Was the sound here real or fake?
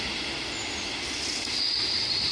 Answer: real